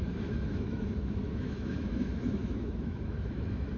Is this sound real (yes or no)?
no